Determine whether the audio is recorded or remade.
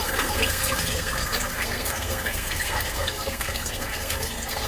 remade